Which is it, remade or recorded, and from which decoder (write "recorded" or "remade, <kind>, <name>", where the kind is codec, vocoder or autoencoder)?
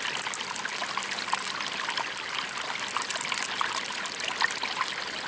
recorded